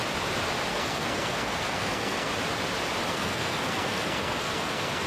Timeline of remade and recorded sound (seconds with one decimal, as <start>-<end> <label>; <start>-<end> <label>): 0.0-0.7 recorded; 0.7-2.3 remade; 2.3-3.1 recorded; 3.1-5.1 remade